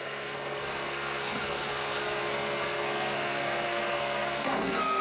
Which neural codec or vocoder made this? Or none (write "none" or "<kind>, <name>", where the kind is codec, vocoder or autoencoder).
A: codec, SNAC